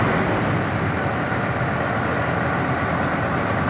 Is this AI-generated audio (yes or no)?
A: no